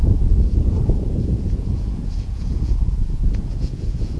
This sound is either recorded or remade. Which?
remade